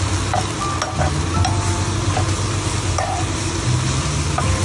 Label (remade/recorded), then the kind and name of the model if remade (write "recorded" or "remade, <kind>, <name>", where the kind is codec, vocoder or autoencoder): recorded